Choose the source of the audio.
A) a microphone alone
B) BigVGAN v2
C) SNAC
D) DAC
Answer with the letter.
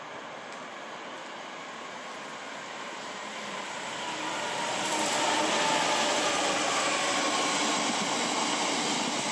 A